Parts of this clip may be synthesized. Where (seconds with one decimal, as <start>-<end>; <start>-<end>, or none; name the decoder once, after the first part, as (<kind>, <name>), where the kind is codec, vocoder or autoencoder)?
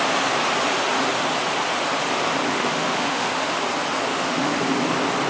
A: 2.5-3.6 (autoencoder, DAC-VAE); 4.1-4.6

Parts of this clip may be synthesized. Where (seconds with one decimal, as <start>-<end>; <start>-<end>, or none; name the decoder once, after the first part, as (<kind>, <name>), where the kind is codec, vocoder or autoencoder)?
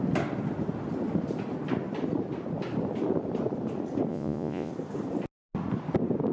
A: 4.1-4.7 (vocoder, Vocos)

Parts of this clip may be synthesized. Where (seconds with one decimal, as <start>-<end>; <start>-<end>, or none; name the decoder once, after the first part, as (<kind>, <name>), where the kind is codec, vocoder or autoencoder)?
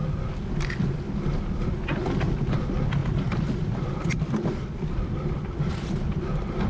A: 3.0-6.2 (vocoder, BigVGAN v2)